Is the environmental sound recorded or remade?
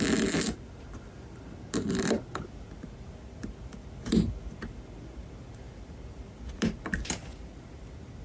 recorded